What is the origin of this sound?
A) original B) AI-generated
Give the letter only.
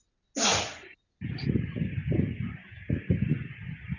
A